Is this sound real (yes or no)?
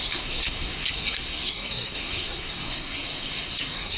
no